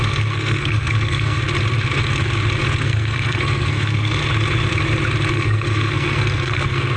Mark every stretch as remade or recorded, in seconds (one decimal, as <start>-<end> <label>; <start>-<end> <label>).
0.0-1.4 remade; 1.4-2.8 recorded; 2.8-4.2 remade; 4.2-5.3 recorded; 5.3-7.0 remade